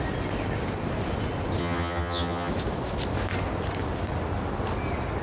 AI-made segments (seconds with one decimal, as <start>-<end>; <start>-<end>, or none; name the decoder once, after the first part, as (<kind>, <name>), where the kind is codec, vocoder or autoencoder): 1.6-2.5 (vocoder, HiFi-GAN)